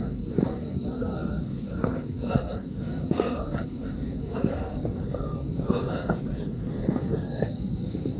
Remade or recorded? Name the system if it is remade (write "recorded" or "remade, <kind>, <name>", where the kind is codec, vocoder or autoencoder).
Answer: remade, codec, SNAC